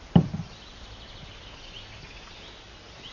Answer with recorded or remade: recorded